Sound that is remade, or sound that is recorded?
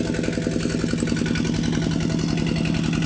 recorded